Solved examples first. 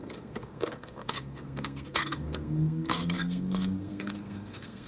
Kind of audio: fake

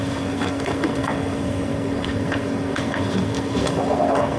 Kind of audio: fake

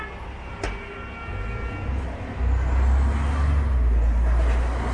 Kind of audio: real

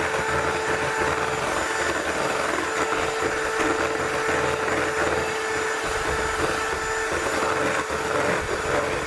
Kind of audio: real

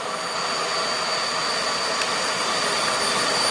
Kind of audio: real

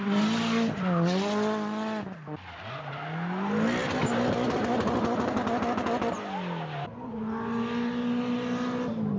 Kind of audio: real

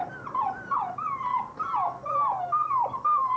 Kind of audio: real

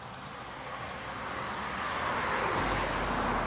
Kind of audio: real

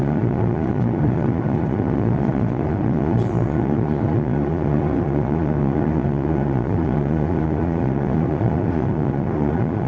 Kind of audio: fake